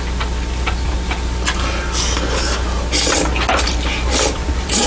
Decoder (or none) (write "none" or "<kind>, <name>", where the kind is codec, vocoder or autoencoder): none